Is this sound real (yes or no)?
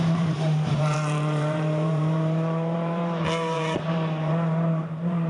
no